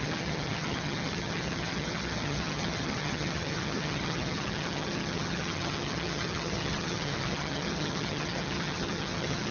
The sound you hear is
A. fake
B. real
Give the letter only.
A